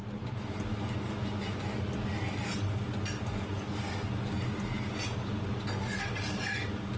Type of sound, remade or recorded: recorded